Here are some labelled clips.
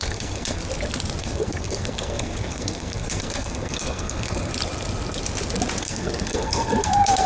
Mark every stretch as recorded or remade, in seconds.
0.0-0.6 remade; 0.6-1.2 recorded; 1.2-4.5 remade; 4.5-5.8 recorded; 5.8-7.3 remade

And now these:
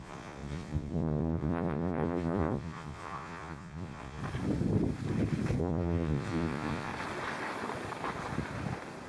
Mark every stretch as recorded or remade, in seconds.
0.0-4.2 remade; 4.2-5.6 recorded; 5.6-6.9 remade; 6.9-9.1 recorded

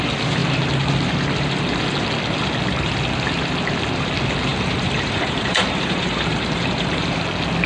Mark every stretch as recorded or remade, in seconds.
0.0-4.5 recorded; 4.5-7.2 remade; 7.2-7.7 recorded

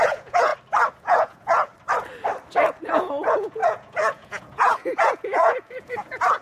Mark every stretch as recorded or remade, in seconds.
0.0-0.5 remade; 0.5-1.0 recorded; 1.0-1.7 remade; 1.7-2.9 recorded; 2.9-6.4 remade

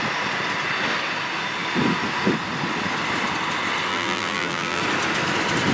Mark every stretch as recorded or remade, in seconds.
0.0-3.9 recorded; 3.9-4.8 remade; 4.8-5.7 recorded

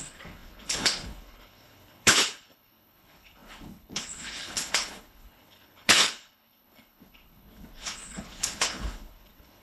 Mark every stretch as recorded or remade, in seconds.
0.0-9.6 remade

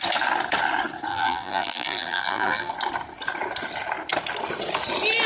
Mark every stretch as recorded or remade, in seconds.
0.0-1.1 recorded; 1.1-2.7 remade; 2.7-5.3 recorded